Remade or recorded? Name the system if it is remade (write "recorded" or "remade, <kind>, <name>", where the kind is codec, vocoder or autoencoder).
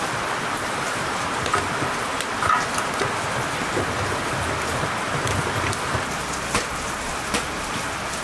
recorded